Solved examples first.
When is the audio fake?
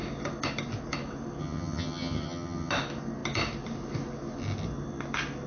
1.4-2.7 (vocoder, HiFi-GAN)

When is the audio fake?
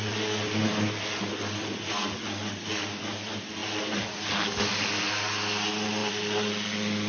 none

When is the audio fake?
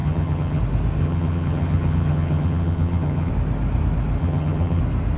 0.0-0.6 (vocoder, HiFi-GAN); 1.0-3.3; 4.2-4.8